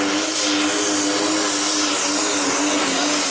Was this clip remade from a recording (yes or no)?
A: no